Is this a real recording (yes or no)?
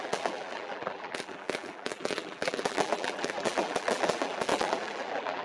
no